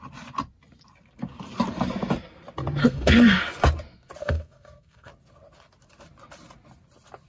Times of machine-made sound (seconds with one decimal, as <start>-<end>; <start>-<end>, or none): 2.8-3.4; 4.2-5.1